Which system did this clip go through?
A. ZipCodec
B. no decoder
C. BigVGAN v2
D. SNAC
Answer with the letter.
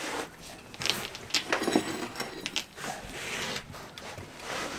B